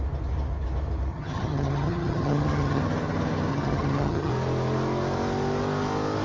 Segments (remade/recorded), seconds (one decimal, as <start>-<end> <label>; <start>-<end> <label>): 0.0-1.1 recorded; 1.1-2.8 remade; 2.8-3.5 recorded; 3.5-4.3 remade; 4.3-6.2 recorded